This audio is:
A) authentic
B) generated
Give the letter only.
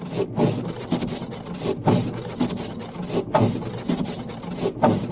A